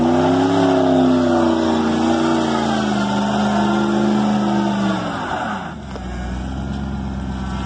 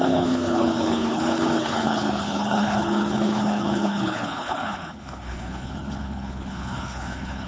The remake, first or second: second